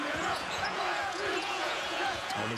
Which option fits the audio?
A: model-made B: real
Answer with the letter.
A